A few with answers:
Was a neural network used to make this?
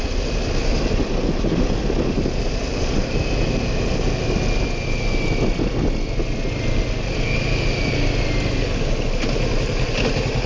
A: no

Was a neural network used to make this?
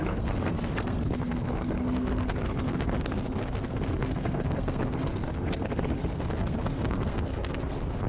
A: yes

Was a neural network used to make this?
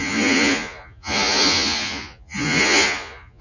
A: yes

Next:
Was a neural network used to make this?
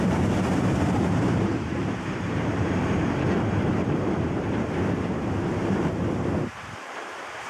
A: yes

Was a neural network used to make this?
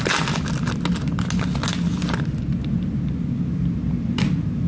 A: no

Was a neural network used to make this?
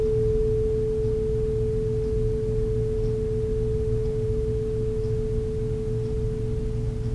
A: no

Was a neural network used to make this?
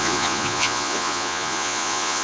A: yes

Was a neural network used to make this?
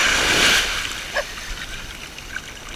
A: no